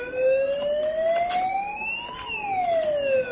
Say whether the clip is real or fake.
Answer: real